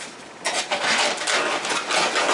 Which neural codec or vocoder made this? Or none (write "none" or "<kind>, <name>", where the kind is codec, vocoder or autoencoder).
none